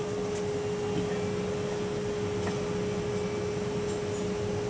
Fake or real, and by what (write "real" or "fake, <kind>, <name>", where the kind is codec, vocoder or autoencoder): real